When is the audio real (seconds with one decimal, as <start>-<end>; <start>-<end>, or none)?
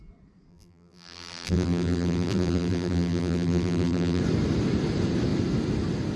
0.0-0.5; 4.2-6.2